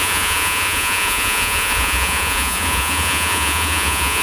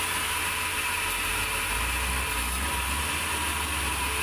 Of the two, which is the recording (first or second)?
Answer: second